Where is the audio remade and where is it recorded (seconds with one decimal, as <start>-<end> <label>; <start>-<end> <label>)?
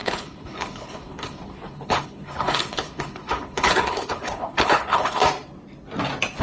0.0-5.2 remade; 5.2-6.4 recorded